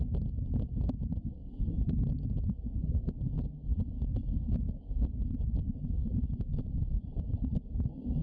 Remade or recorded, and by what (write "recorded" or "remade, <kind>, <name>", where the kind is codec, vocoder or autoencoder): remade, codec, DAC